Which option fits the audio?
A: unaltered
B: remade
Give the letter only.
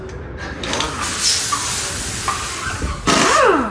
A